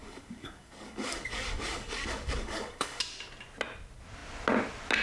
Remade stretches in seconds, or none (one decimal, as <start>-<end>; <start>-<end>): 0.0-3.0